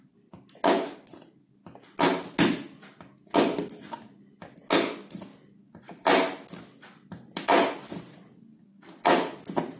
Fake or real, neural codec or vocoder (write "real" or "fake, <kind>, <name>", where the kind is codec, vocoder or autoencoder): real